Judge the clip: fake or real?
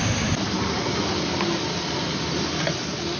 real